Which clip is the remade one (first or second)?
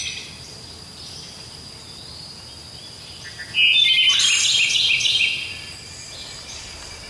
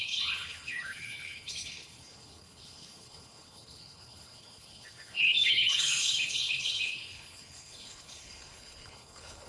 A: second